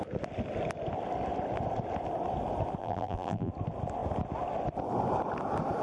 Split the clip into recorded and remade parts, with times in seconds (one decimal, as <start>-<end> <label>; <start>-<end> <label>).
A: 0.0-2.8 recorded; 2.8-3.5 remade; 3.5-5.8 recorded